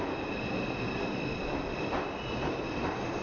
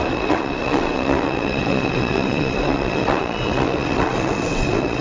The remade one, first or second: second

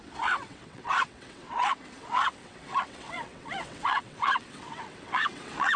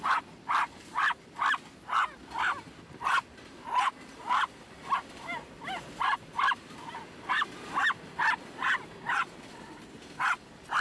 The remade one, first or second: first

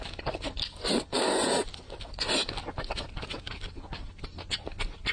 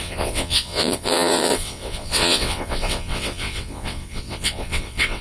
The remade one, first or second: second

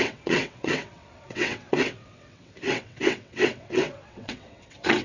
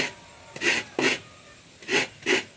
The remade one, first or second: first